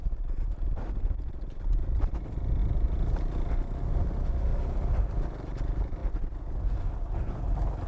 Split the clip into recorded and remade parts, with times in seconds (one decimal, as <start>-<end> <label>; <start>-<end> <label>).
0.0-7.9 recorded